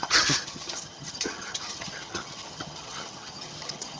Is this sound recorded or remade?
remade